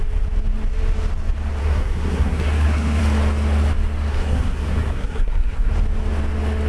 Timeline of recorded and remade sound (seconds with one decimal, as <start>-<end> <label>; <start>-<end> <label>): 0.0-1.6 recorded; 1.6-3.0 remade; 3.0-4.1 recorded; 4.1-5.7 remade; 5.7-6.7 recorded